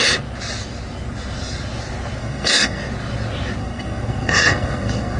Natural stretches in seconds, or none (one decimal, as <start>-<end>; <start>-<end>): 0.0-2.2; 2.8-3.6